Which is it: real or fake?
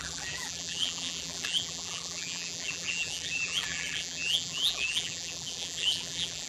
fake